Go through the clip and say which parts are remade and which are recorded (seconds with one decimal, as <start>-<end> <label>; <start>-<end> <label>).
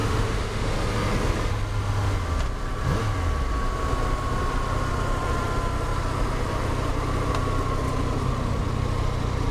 0.0-0.7 remade; 0.7-9.5 recorded